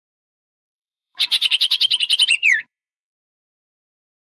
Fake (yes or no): yes